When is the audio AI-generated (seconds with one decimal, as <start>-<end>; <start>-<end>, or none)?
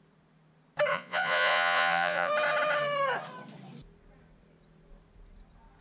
0.9-2.3